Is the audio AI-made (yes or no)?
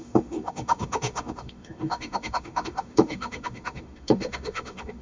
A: yes